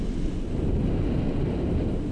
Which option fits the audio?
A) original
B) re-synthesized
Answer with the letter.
A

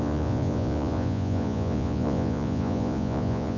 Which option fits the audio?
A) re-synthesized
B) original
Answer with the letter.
A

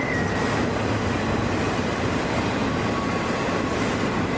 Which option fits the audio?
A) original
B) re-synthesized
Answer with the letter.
A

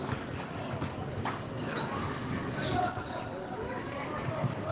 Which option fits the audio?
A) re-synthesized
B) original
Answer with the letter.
A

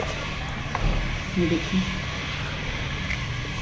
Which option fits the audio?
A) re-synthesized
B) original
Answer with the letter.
B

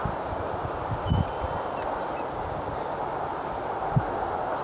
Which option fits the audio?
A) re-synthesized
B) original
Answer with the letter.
B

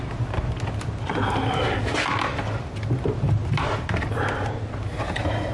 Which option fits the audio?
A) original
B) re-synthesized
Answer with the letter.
A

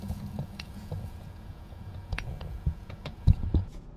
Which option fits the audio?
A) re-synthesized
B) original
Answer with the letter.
A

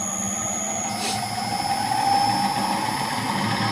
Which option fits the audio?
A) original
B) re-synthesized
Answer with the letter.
A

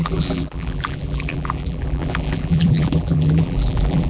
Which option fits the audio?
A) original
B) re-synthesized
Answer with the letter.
B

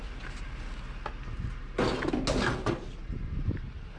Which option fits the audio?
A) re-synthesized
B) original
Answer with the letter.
B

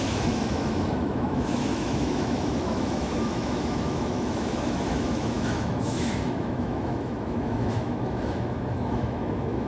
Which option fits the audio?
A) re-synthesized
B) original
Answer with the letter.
A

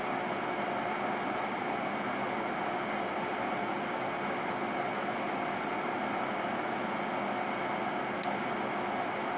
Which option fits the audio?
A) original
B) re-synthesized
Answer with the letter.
A